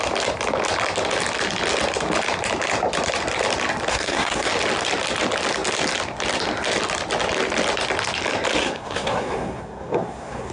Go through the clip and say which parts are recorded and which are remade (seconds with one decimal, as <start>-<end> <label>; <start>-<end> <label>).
0.0-3.9 recorded; 3.9-4.5 remade; 4.5-8.6 recorded; 8.6-10.5 remade